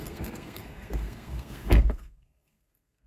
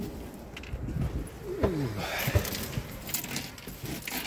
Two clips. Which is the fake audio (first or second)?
first